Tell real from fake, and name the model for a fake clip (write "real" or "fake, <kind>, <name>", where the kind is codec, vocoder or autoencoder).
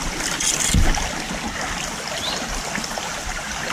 real